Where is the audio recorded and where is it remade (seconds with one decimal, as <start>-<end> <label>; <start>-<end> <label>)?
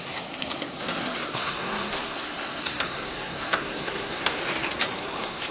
0.0-4.4 remade; 4.4-5.0 recorded; 5.0-5.5 remade